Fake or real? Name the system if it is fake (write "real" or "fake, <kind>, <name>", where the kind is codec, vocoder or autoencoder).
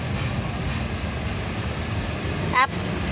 real